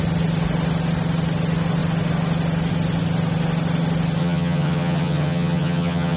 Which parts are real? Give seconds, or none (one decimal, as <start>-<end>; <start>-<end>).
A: 0.0-4.2